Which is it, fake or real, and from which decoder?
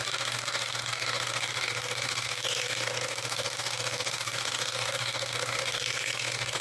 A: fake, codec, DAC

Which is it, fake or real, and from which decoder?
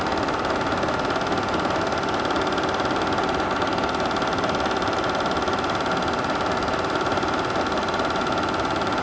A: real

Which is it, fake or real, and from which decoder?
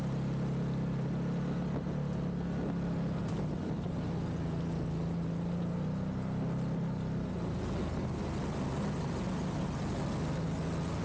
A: real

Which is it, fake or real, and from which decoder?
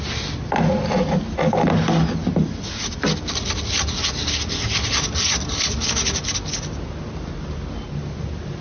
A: real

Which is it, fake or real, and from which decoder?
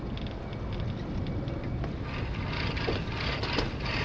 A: real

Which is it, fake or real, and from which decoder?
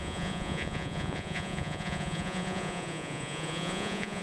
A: fake, vocoder, Vocos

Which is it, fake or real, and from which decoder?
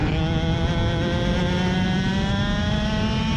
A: real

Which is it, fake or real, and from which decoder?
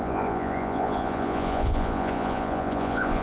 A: fake, vocoder, Vocos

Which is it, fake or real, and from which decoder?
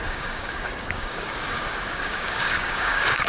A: fake, codec, DAC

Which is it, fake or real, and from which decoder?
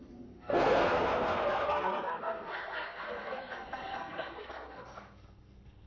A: fake, codec, SNAC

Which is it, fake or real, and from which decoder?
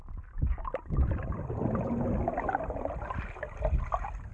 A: real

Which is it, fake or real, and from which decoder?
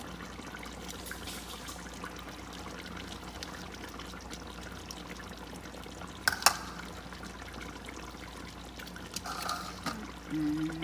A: real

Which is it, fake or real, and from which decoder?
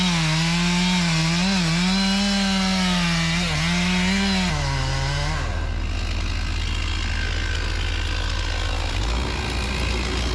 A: real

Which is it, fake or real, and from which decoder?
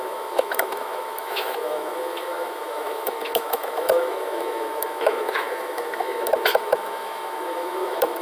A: fake, autoencoder, DAC-VAE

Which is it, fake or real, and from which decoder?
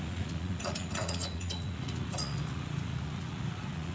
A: fake, vocoder, Vocos